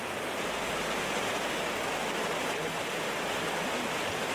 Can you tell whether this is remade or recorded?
recorded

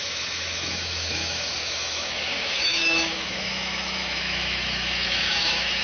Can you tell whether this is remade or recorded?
remade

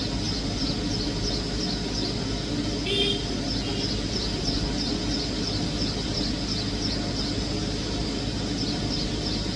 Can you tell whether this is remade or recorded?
recorded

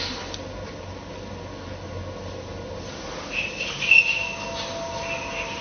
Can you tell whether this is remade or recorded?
recorded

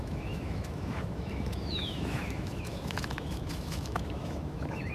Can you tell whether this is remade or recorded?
remade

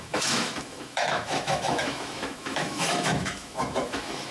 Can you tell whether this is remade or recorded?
remade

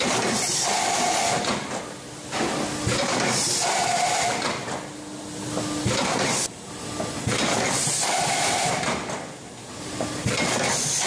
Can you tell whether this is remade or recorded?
recorded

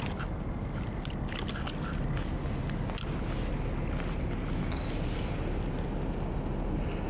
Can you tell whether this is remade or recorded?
recorded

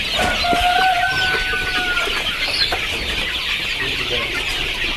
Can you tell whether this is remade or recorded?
recorded